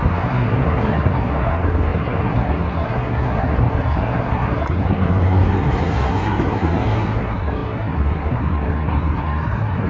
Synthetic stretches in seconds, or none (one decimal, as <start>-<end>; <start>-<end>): 0.0-9.9